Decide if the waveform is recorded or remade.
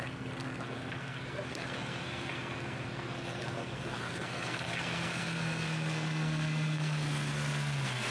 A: remade